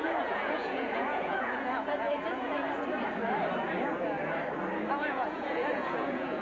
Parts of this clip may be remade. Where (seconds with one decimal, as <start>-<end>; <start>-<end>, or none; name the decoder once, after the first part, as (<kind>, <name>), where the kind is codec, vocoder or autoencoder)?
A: 0.0-2.6 (vocoder, Vocos); 4.9-6.4

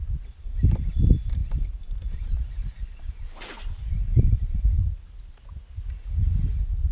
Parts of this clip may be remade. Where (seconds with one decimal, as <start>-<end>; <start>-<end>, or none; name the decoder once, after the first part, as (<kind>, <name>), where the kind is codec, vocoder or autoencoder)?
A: none

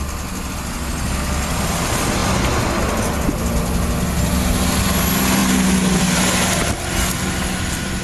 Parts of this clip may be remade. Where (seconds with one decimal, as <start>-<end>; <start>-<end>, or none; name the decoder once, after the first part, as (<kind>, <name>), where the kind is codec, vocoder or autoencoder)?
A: none

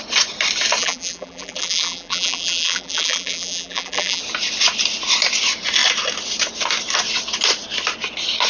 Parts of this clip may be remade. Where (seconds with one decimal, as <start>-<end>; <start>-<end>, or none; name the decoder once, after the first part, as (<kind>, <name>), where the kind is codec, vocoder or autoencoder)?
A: 0.8-4.2 (vocoder, BigVGAN v2)

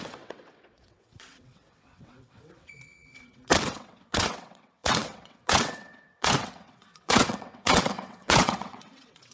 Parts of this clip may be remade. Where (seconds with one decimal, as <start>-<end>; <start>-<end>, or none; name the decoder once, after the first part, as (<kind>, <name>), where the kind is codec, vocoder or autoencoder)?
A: 0.0-9.3 (vocoder, WaveNeXt)

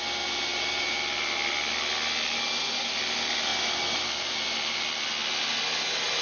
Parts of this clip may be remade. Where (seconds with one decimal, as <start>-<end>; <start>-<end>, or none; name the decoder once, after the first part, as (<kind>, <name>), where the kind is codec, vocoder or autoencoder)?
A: none

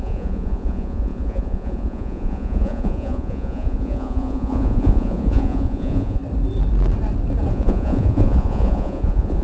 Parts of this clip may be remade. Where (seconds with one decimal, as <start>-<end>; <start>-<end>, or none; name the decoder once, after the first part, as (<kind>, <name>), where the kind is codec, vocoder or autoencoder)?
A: 0.0-6.2 (vocoder, Vocos); 7.5-9.4

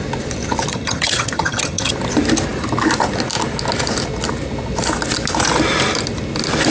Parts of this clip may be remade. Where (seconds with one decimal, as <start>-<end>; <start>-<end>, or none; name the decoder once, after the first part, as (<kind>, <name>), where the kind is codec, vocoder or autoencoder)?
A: 0.7-1.9 (vocoder, HiFi-GAN)